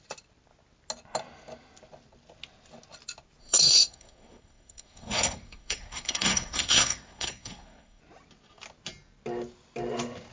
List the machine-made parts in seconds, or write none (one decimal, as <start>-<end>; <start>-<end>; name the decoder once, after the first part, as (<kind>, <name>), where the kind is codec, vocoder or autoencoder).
3.4-8.0 (codec, SNAC)